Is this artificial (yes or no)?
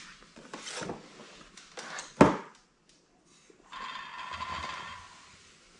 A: no